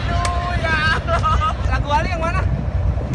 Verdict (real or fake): real